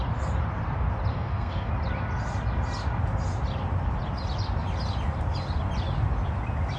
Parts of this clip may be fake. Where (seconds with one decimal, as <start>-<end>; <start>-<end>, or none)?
1.1-1.7

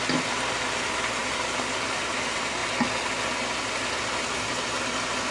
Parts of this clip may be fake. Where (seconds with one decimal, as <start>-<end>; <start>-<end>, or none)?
none

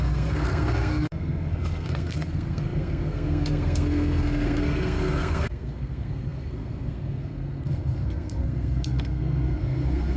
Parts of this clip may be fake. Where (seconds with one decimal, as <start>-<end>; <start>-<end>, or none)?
0.0-10.2

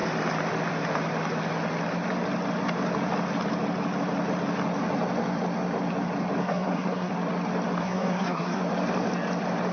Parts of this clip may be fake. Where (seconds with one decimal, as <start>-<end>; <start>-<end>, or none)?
6.4-7.1; 7.8-8.6

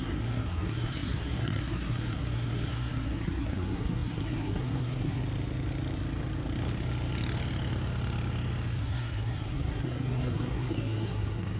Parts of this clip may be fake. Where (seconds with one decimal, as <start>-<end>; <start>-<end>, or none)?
0.0-5.2; 8.8-11.6

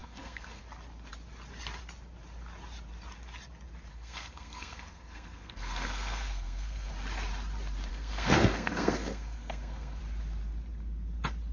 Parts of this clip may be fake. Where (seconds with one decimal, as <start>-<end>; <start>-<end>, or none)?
0.0-0.6; 3.9-6.9; 7.9-10.0